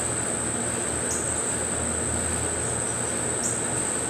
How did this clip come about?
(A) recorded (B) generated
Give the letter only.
A